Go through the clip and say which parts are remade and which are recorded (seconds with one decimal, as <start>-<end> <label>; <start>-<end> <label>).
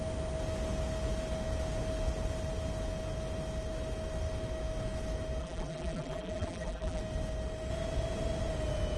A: 0.0-5.4 recorded; 5.4-7.0 remade; 7.0-9.0 recorded